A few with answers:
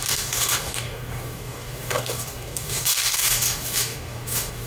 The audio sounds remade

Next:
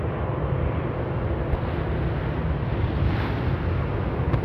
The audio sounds recorded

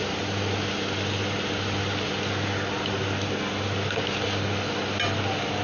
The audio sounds recorded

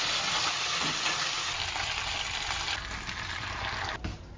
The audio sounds recorded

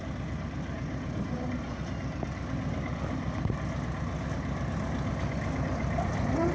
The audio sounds recorded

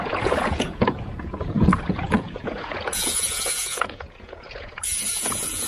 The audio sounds remade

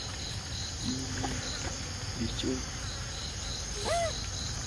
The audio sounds recorded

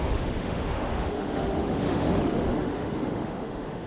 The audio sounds remade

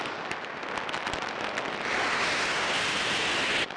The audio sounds recorded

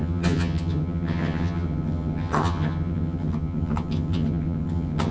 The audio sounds remade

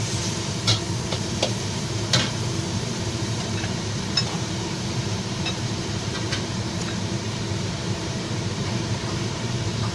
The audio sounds remade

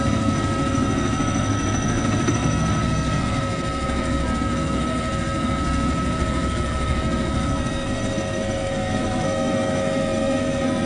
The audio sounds remade